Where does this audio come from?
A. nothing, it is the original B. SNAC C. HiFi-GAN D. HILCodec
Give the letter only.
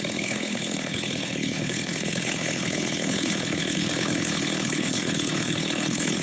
D